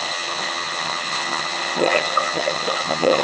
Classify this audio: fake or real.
fake